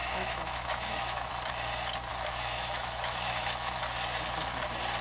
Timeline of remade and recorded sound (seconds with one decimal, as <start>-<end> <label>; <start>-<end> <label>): 0.0-1.3 remade; 1.3-2.1 recorded; 2.1-3.8 remade; 3.8-5.0 recorded